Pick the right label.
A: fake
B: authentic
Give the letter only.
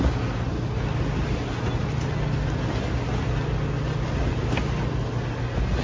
B